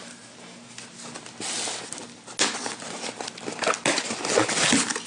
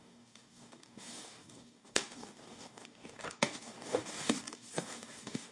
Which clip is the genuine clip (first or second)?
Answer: first